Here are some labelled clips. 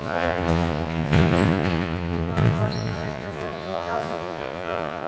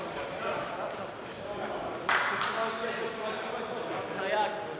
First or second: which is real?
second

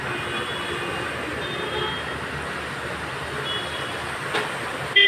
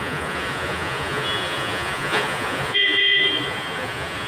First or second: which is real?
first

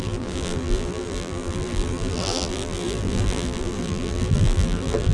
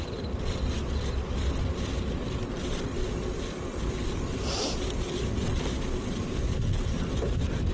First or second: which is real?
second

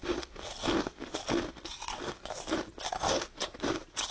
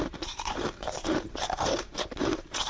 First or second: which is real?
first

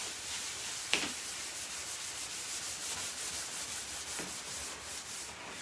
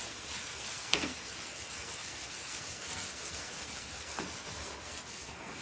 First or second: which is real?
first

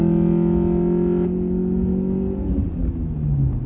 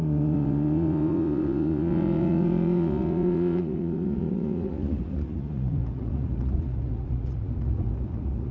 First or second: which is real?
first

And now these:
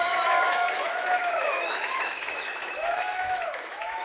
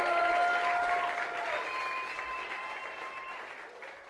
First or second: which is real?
second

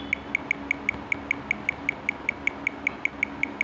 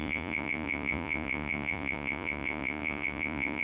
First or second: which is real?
first